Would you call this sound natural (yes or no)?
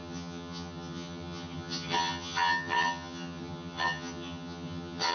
no